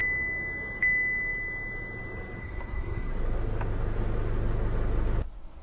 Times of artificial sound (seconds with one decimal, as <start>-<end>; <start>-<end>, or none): 2.4-3.1